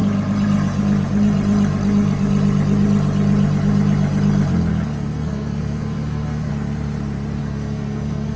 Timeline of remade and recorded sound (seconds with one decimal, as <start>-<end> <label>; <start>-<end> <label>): 0.0-4.7 recorded; 4.7-6.5 remade; 6.5-7.4 recorded; 7.4-8.4 remade

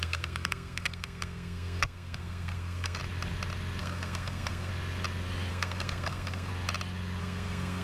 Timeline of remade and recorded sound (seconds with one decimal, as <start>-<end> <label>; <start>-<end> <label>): 0.0-3.0 remade; 3.0-3.8 recorded; 3.8-4.7 remade; 4.7-5.5 recorded; 5.5-6.5 remade; 6.5-7.2 recorded; 7.2-7.8 remade

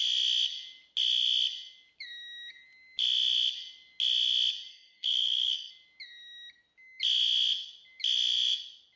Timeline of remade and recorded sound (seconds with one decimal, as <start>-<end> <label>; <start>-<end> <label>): 0.0-4.7 recorded; 4.7-5.7 remade; 5.7-9.0 recorded

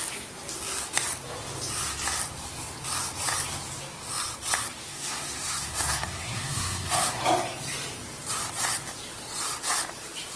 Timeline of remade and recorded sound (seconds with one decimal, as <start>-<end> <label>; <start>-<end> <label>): 0.0-4.9 recorded; 4.9-7.2 remade; 7.2-10.4 recorded

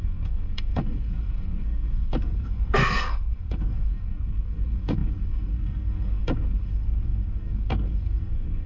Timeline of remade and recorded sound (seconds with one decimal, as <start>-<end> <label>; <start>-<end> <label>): 0.0-8.7 remade

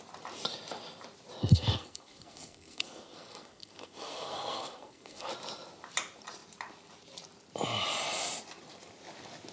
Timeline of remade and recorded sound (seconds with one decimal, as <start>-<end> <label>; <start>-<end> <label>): 0.0-1.4 recorded; 1.4-5.3 remade; 5.3-9.5 recorded